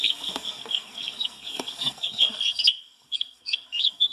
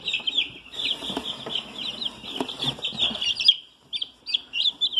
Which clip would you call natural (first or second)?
second